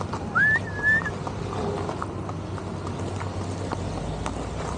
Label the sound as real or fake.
real